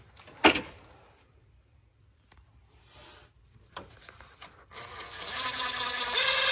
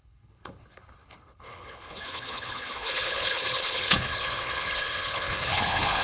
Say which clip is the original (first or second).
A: first